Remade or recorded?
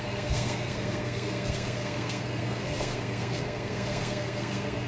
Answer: remade